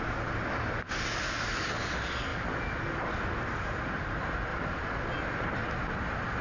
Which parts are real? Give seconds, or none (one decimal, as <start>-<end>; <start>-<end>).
0.0-4.5; 5.1-6.4